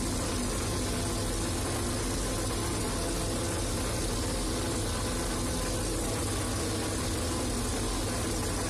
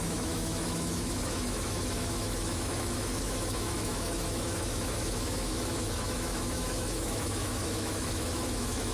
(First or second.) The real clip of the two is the first